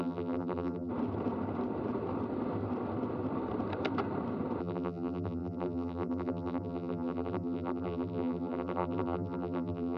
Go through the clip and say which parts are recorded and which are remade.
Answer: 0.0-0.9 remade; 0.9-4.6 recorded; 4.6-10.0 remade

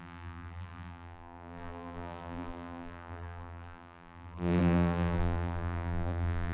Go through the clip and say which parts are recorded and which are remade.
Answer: 0.0-6.5 remade